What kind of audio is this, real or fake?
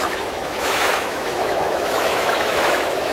fake